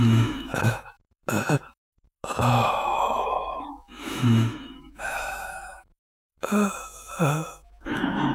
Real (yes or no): no